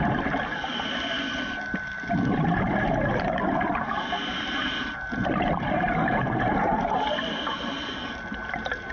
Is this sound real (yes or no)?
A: yes